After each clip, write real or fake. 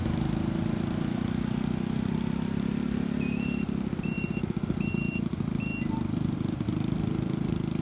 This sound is real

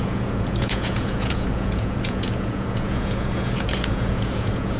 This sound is fake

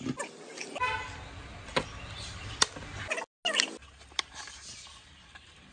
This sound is real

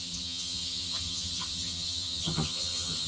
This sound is fake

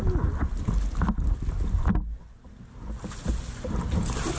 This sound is real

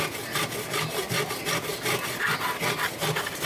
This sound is real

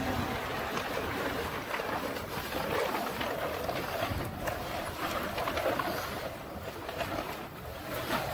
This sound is real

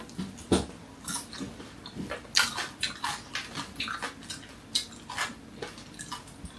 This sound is real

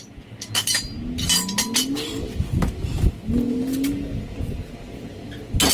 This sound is real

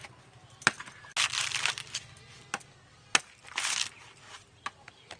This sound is real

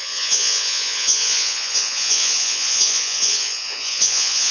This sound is fake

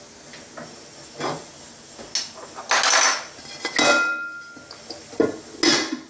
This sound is real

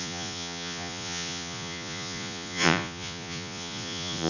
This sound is fake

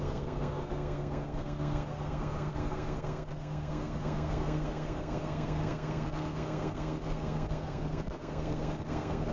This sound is fake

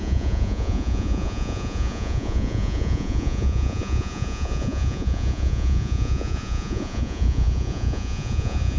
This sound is fake